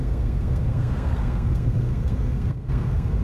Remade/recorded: remade